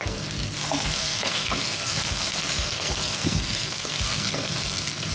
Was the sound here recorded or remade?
remade